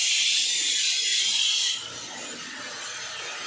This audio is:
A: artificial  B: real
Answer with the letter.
A